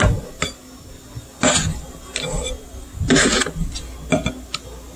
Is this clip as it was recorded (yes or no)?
yes